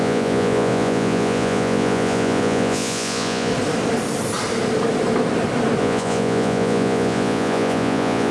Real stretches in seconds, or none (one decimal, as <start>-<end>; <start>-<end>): 3.5-5.8